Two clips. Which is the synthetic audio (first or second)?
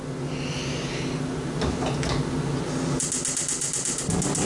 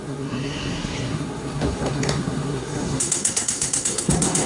second